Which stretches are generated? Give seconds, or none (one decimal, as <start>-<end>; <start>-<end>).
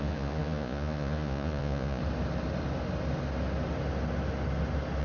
0.0-2.0